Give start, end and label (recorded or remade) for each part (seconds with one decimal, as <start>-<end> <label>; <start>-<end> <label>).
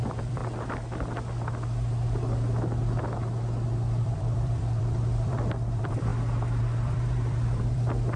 0.0-0.4 remade; 0.4-4.0 recorded; 4.0-6.1 remade; 6.1-6.6 recorded; 6.6-8.2 remade